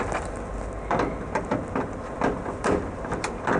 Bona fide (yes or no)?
yes